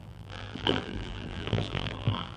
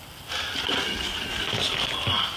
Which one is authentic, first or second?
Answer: second